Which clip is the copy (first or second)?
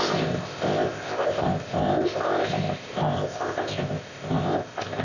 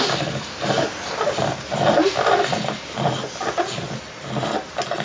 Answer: first